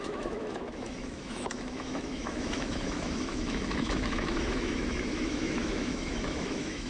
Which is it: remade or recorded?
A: remade